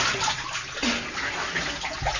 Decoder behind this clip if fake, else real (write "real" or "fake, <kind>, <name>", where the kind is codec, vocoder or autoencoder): real